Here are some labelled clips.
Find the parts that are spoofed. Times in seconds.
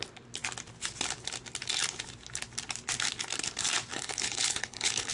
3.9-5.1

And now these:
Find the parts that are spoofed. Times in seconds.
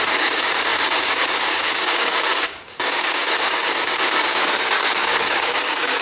0.0-6.0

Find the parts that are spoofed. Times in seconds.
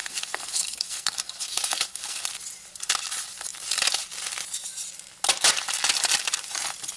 0.0-2.3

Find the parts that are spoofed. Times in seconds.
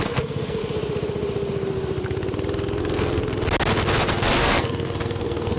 0.0-0.6; 2.8-3.2; 4.1-5.6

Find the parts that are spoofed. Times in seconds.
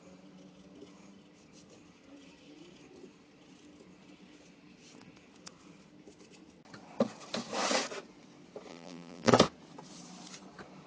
8.7-9.3